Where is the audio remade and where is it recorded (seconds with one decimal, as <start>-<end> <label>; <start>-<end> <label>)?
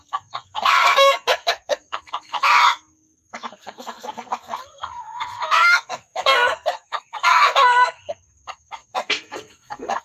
0.0-10.0 remade